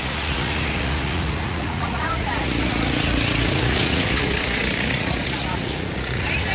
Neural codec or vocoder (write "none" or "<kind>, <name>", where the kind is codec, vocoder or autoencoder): vocoder, Vocos